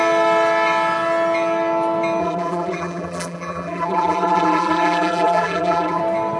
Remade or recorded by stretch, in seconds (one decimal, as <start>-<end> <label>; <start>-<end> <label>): 0.0-2.2 recorded; 2.2-6.0 remade; 6.0-6.4 recorded